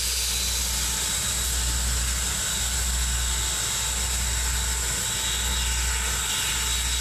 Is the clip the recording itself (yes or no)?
yes